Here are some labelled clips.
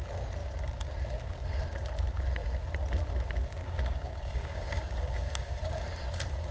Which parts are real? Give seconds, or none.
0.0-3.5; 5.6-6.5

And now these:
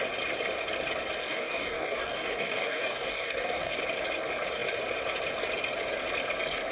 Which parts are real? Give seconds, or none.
0.0-1.2; 3.8-6.7